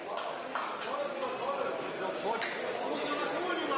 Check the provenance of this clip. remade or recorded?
recorded